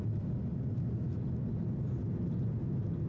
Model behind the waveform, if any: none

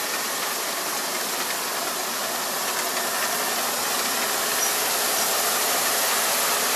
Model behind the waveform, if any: none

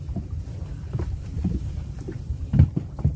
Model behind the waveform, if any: vocoder, BigVGAN v2